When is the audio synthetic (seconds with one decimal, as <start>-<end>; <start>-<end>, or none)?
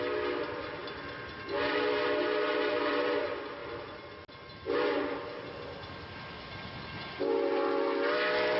none